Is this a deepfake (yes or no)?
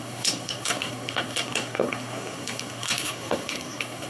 yes